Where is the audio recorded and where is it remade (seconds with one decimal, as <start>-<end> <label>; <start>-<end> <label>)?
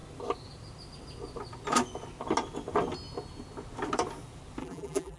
0.0-4.6 recorded; 4.6-5.2 remade